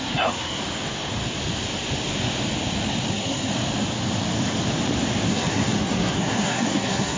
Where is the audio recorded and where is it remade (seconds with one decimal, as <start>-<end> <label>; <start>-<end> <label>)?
0.0-0.6 remade; 0.6-3.1 recorded; 3.1-3.5 remade; 3.5-5.3 recorded; 5.3-7.2 remade